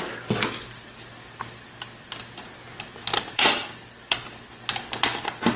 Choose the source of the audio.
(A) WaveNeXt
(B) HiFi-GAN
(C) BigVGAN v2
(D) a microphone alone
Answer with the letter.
C